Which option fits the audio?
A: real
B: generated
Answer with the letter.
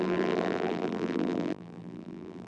B